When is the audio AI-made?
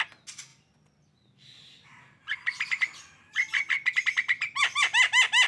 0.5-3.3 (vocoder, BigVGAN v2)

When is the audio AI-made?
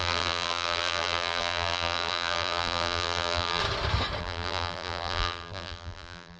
0.0-3.6 (vocoder, BigVGAN v2); 4.2-6.4